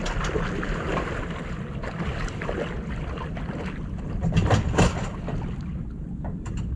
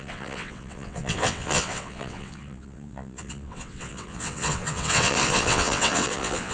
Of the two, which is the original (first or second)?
first